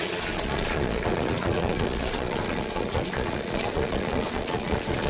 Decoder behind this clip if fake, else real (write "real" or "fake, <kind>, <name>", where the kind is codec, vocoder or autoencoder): fake, vocoder, Vocos